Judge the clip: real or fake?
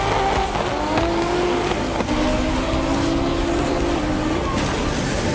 real